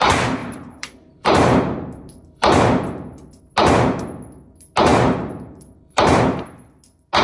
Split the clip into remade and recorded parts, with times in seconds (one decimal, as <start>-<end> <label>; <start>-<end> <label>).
0.0-0.4 recorded; 0.4-3.4 remade; 3.4-4.9 recorded; 4.9-6.2 remade; 6.2-7.2 recorded